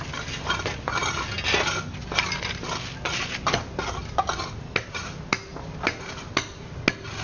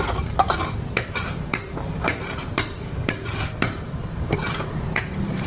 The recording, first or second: first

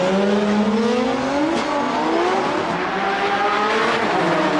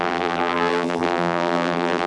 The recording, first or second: first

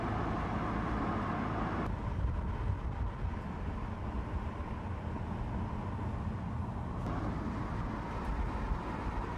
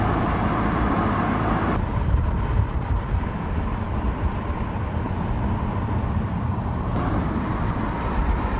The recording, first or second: first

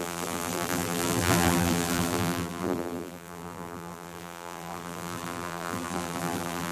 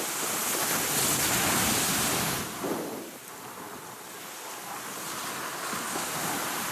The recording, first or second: second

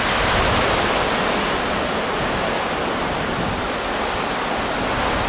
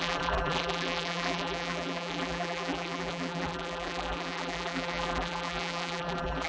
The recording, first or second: first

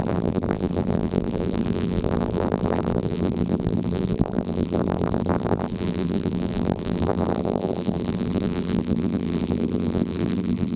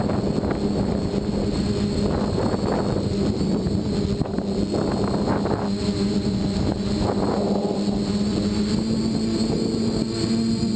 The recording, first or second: second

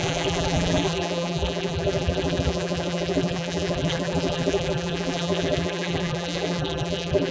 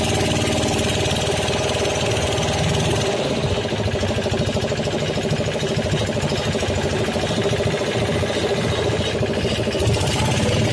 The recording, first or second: second